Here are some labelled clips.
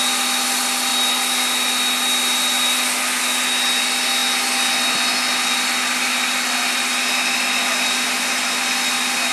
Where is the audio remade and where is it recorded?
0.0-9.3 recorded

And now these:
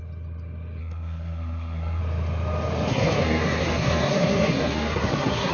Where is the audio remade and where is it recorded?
0.0-0.8 recorded; 0.8-2.0 remade; 2.0-2.9 recorded; 2.9-5.5 remade

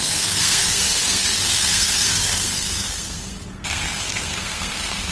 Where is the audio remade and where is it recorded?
0.0-5.1 remade

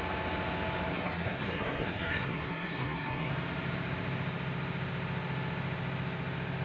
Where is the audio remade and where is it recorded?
0.0-0.9 recorded; 0.9-3.3 remade; 3.3-6.6 recorded

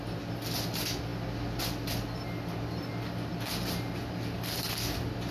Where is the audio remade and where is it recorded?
0.0-5.3 recorded

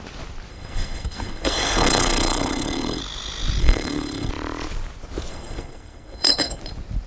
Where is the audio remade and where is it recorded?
0.0-0.5 recorded; 0.5-3.0 remade; 3.0-3.6 recorded; 3.6-4.3 remade; 4.3-5.3 recorded; 5.3-6.6 remade; 6.6-7.1 recorded